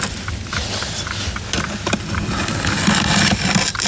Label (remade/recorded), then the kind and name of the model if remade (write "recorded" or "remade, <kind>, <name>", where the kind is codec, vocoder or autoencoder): recorded